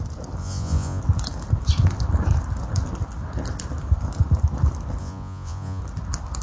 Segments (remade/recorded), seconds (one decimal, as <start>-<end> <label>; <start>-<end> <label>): 0.0-0.4 recorded; 0.4-1.0 remade; 1.0-5.0 recorded; 5.0-5.8 remade; 5.8-6.4 recorded